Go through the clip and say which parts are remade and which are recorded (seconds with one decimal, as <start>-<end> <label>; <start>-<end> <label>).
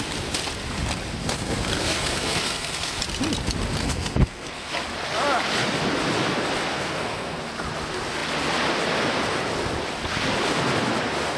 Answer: 0.0-1.2 recorded; 1.2-3.0 remade; 3.0-3.8 recorded; 3.8-4.7 remade; 4.7-6.7 recorded; 6.7-7.4 remade; 7.4-11.4 recorded